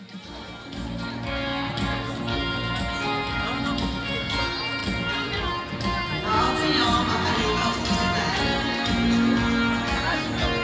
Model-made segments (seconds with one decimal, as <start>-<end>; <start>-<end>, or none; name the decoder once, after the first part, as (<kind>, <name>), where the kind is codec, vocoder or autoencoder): 4.8-5.5 (vocoder, BigVGAN v2)